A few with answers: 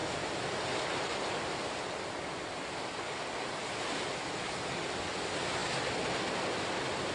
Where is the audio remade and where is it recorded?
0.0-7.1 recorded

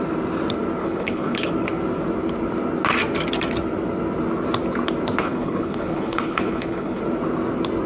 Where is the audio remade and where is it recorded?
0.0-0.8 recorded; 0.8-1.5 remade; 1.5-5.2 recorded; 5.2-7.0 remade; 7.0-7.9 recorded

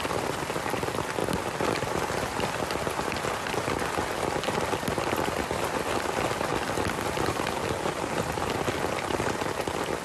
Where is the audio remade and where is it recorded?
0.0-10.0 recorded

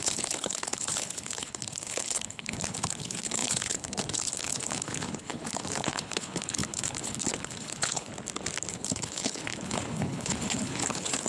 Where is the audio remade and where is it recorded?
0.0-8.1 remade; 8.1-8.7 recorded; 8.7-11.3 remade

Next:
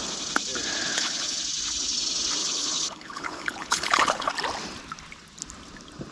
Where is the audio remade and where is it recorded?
0.0-0.9 recorded; 0.9-1.4 remade; 1.4-2.4 recorded; 2.4-4.3 remade; 4.3-6.1 recorded

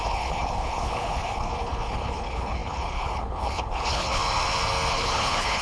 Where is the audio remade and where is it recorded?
0.0-4.2 remade; 4.2-4.9 recorded; 4.9-5.6 remade